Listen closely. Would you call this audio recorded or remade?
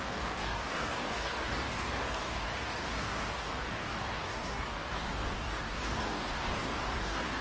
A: remade